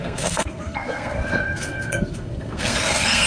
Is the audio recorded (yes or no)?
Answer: no